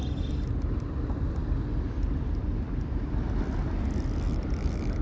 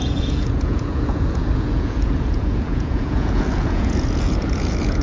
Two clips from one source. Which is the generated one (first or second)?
second